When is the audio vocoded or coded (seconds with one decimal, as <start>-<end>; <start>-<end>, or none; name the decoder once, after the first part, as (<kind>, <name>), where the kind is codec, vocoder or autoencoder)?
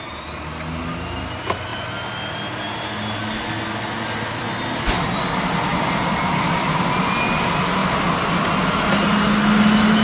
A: none